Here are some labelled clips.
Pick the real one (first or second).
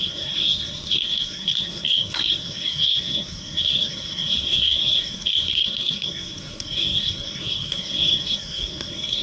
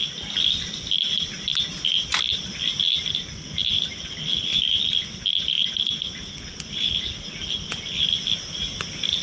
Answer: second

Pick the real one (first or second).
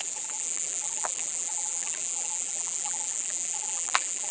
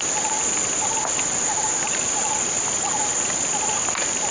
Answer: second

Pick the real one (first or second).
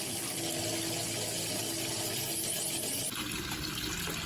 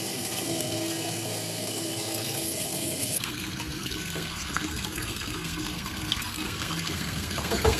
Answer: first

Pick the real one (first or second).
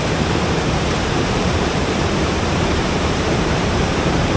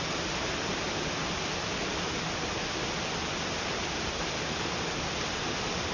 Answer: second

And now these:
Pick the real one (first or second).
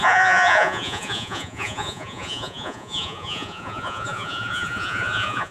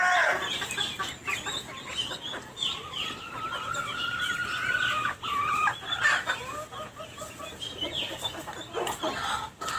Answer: second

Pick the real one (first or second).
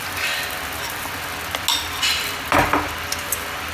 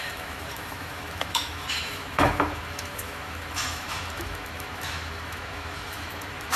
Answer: first